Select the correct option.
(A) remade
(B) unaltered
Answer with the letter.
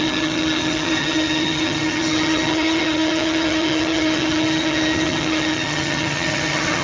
A